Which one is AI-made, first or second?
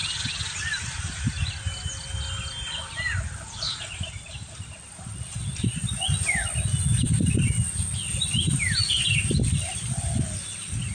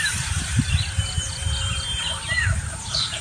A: second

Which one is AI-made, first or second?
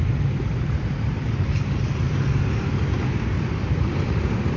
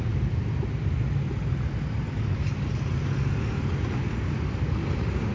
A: first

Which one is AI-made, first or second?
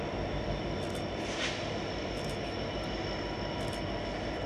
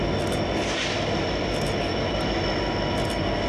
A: first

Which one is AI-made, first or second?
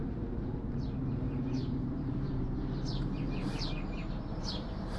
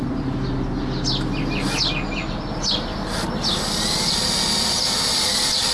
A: first